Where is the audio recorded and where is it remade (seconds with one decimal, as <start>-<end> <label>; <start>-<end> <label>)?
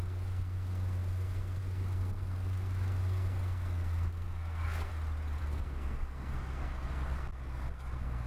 0.0-4.9 remade; 4.9-5.4 recorded; 5.4-8.3 remade